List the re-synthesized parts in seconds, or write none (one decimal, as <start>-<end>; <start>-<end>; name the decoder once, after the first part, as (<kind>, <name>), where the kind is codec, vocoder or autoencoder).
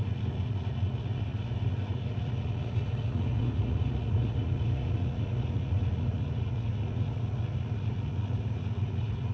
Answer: 0.0-9.3 (vocoder, Vocos)